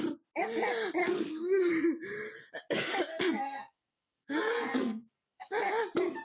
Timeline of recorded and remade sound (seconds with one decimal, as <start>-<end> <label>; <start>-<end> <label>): 0.0-1.0 recorded; 1.0-1.7 remade; 1.7-3.1 recorded; 3.1-5.6 remade; 5.6-6.2 recorded